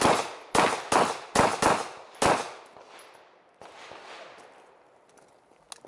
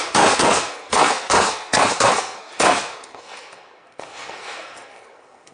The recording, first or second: first